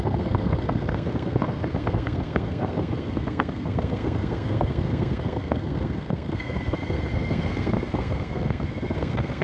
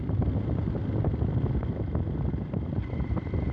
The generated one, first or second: first